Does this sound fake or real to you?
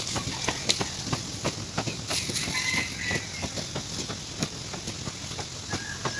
real